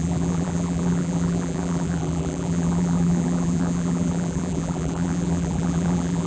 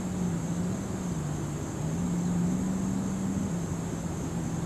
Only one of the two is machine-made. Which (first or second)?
first